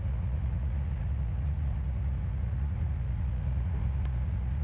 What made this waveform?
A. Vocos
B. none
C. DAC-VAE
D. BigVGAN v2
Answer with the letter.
A